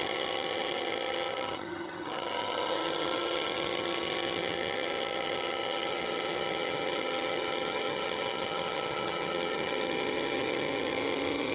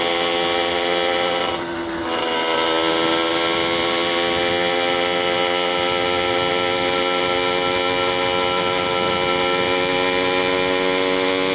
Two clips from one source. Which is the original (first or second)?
second